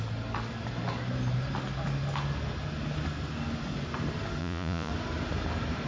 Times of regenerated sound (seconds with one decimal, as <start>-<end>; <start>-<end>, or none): 4.4-4.9